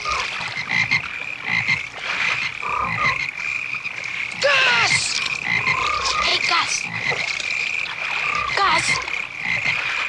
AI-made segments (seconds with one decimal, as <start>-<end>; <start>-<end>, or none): none

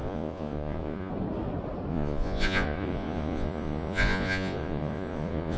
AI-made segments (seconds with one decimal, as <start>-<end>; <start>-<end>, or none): 0.0-1.1; 1.9-5.6

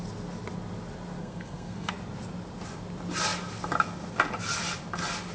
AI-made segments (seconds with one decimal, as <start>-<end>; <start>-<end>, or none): 1.2-1.9

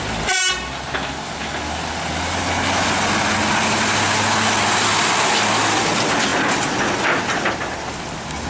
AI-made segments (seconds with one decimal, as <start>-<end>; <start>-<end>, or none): none

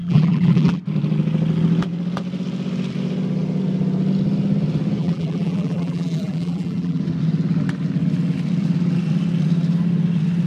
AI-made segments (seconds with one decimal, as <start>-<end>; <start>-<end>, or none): 0.0-0.8; 5.0-7.0